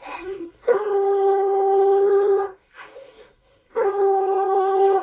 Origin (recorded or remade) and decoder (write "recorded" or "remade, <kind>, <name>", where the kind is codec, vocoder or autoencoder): remade, codec, SNAC